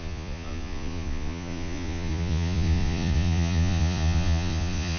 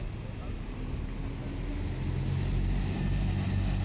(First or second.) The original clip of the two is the second